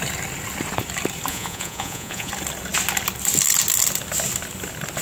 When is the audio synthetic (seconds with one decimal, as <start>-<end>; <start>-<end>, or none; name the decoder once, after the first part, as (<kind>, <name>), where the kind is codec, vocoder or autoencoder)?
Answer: 1.3-2.3 (vocoder, Vocos)